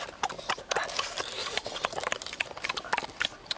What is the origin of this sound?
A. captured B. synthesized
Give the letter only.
A